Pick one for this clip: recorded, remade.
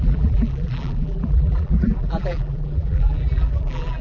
remade